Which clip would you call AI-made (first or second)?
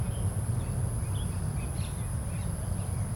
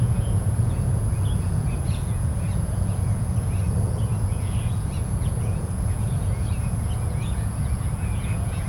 second